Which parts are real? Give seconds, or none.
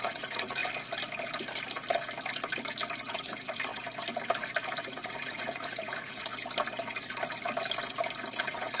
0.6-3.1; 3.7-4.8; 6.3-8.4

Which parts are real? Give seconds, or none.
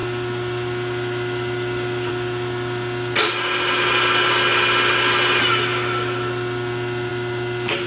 0.0-7.9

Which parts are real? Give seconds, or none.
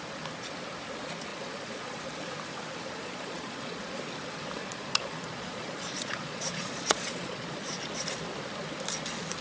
0.0-1.3; 2.0-3.0; 4.0-4.6; 7.8-9.4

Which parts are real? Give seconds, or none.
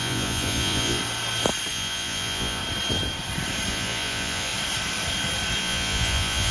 1.0-1.7; 2.6-3.7; 4.5-5.6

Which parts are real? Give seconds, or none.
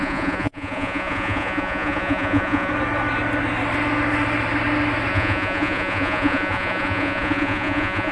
2.7-5.1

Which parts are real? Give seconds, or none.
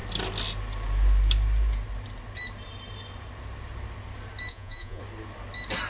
0.0-4.5; 5.0-5.9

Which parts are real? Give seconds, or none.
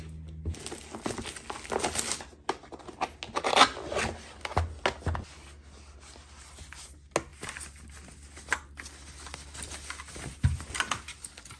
0.0-11.6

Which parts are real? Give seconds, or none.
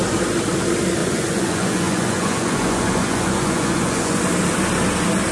0.0-1.0; 4.2-5.3